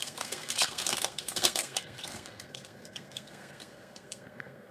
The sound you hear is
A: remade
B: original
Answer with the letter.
A